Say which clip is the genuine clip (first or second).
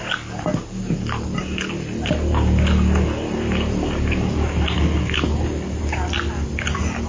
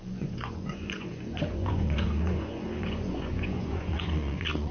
first